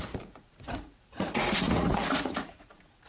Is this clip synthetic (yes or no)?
yes